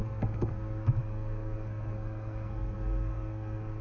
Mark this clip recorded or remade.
remade